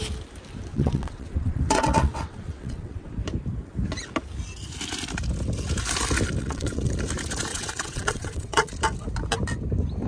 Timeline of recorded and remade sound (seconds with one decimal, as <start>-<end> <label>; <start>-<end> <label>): 0.0-0.7 recorded; 0.7-3.1 remade; 3.1-6.4 recorded; 6.4-6.9 remade; 6.9-7.5 recorded; 7.5-8.7 remade; 8.7-10.1 recorded